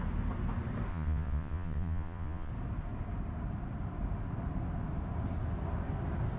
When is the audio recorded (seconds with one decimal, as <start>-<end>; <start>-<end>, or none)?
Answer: 0.0-0.9; 2.5-6.4